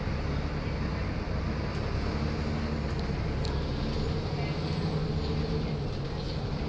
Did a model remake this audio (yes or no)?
no